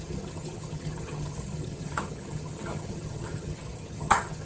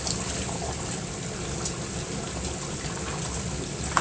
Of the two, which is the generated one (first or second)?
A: first